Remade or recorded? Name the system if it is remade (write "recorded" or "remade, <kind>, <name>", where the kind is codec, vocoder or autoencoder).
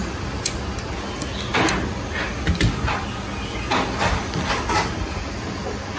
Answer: recorded